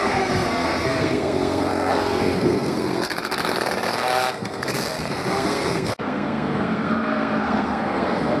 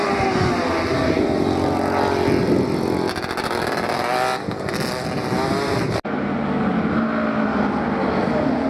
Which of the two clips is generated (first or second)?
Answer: first